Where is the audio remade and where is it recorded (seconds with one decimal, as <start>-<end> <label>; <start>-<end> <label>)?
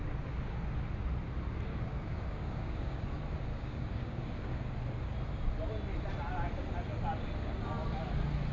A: 0.0-1.7 recorded; 1.7-3.1 remade; 3.1-3.5 recorded; 3.5-4.7 remade; 4.7-8.5 recorded